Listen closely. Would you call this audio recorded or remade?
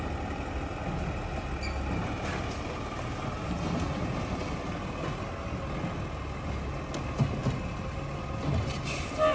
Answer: recorded